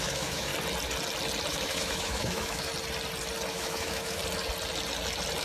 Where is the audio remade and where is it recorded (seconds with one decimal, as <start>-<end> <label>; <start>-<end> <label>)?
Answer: 0.0-0.5 remade; 0.5-1.5 recorded; 1.5-2.7 remade; 2.7-3.5 recorded; 3.5-4.2 remade; 4.2-5.4 recorded